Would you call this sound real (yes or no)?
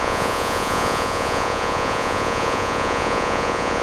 no